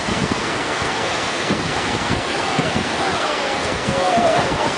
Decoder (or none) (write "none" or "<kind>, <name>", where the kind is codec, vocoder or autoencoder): codec, SNAC